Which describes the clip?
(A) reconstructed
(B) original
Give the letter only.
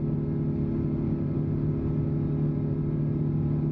B